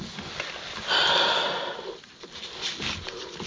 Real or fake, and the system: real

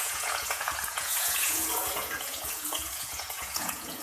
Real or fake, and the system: fake, vocoder, Vocos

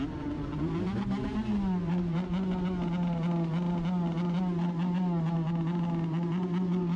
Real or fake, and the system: real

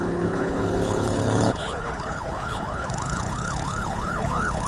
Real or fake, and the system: fake, codec, HILCodec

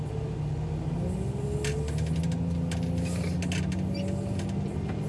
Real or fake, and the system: real